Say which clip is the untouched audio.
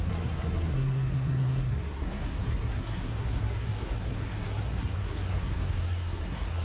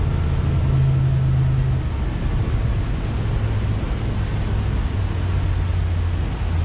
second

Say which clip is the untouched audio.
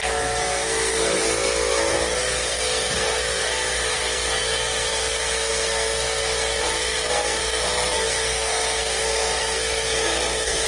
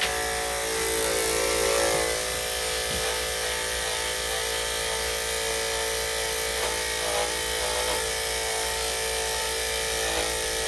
second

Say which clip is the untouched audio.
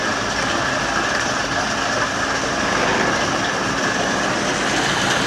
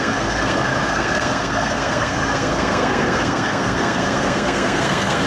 first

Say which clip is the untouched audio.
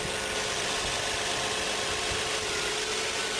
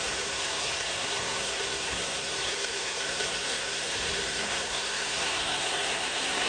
first